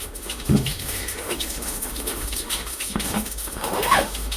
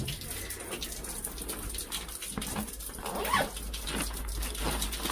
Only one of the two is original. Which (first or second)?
second